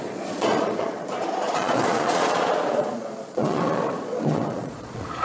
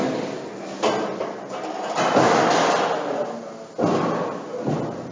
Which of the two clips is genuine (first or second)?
second